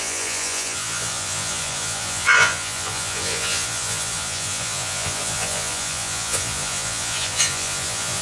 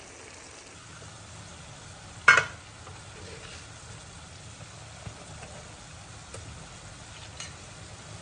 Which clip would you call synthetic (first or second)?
first